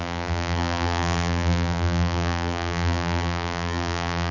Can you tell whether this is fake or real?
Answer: fake